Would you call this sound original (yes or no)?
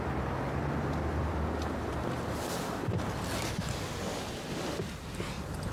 yes